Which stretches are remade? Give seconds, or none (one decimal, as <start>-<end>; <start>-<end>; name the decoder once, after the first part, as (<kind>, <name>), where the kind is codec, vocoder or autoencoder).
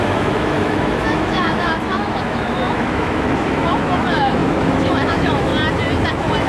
0.0-5.5 (autoencoder, DAC-VAE); 6.1-6.5